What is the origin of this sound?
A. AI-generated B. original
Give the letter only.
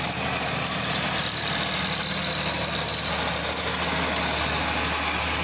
B